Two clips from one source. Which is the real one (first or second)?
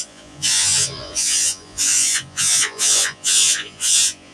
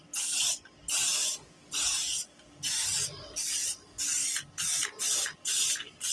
second